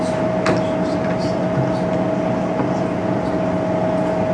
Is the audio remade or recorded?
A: recorded